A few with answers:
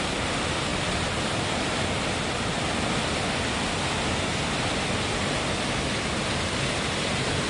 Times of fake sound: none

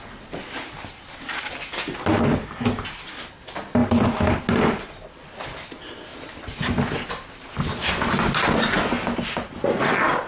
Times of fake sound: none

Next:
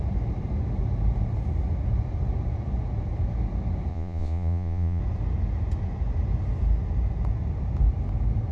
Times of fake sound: 3.9-5.0

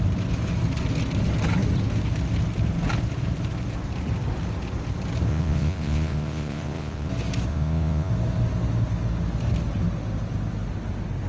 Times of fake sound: 5.3-7.1; 7.5-8.1